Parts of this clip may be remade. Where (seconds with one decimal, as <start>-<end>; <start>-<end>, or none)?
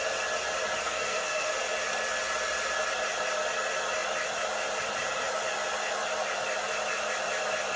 0.8-1.5